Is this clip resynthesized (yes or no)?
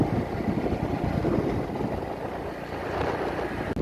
no